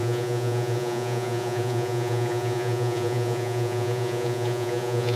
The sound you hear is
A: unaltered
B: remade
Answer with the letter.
B